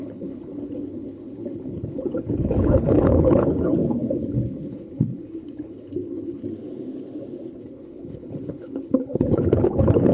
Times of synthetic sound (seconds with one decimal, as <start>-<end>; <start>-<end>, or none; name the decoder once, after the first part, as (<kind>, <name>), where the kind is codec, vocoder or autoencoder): 0.0-6.4 (codec, HILCodec); 7.6-10.1